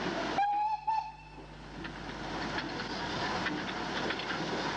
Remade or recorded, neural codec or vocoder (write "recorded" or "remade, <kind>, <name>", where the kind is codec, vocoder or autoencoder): recorded